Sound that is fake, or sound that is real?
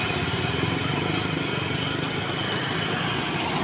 real